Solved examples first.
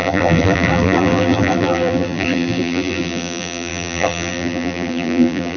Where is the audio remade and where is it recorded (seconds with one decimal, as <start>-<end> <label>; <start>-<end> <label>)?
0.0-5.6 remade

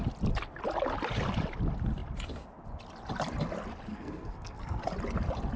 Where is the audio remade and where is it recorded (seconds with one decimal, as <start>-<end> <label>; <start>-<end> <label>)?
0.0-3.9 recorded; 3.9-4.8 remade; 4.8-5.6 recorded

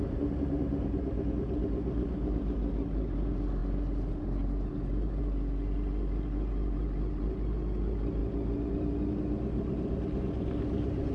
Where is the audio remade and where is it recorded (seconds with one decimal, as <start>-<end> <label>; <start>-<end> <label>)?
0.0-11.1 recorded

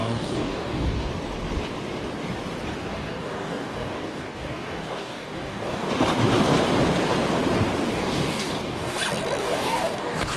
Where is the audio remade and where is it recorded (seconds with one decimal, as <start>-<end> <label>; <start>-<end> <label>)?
0.0-1.1 remade; 1.1-2.9 recorded; 2.9-5.9 remade; 5.9-7.9 recorded; 7.9-9.0 remade; 9.0-9.4 recorded; 9.4-10.4 remade

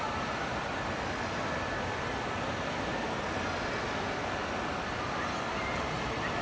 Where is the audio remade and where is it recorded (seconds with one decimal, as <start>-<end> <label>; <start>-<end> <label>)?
0.0-6.4 recorded